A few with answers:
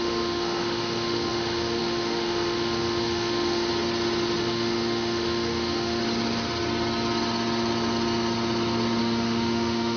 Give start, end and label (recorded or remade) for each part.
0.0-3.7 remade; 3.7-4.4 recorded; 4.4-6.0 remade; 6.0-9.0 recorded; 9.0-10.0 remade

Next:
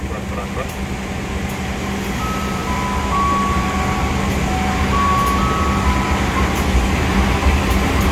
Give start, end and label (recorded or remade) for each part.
0.0-8.1 recorded

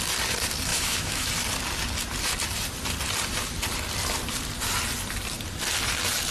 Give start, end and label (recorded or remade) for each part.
0.0-0.7 recorded; 0.7-1.3 remade; 1.3-6.3 recorded

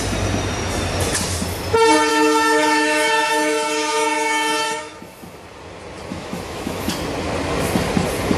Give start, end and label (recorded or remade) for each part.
0.0-2.1 recorded; 2.1-5.0 remade; 5.0-6.1 recorded; 6.1-6.9 remade; 6.9-8.4 recorded

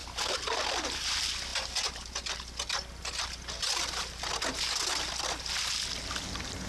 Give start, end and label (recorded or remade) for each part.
0.0-6.7 recorded

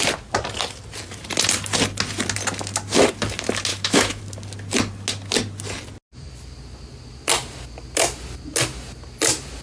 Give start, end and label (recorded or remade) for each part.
0.0-3.7 recorded; 3.7-4.2 remade; 4.2-9.6 recorded